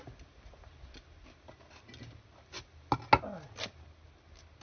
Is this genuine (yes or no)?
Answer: yes